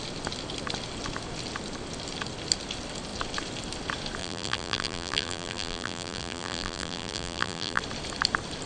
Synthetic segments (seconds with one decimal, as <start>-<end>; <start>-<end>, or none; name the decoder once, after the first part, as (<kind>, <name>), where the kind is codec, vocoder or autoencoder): 4.2-7.8 (vocoder, BigVGAN v2)